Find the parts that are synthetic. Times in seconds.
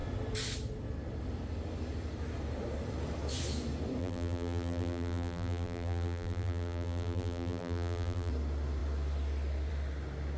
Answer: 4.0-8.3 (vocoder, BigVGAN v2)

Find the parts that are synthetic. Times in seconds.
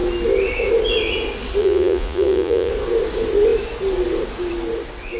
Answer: 1.6-2.7 (vocoder, Vocos)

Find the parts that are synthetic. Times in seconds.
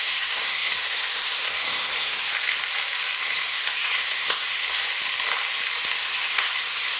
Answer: 0.0-2.3 (codec, SNAC); 3.2-4.9; 6.0-7.0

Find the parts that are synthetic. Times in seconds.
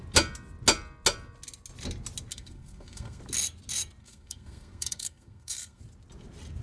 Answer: 2.3-3.2 (codec, SNAC); 4.0-5.8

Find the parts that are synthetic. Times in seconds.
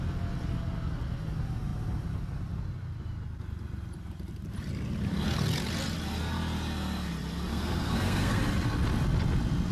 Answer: 7.5-8.4 (codec, SNAC)